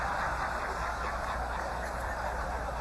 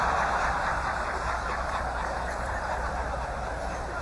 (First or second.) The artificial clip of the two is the second